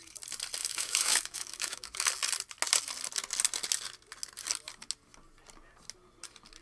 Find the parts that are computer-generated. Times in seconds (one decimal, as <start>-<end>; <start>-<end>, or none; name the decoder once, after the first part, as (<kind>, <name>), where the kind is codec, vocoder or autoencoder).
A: 0.6-2.1 (autoencoder, DAC-VAE)